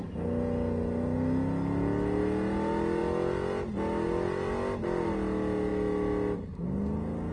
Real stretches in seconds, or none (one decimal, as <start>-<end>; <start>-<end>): 0.0-7.3